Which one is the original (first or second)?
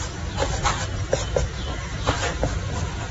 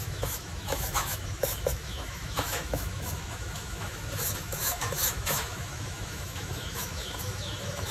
first